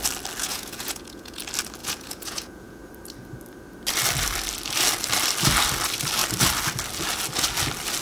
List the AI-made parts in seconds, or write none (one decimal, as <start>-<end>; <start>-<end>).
0.4-1.4; 1.8-2.9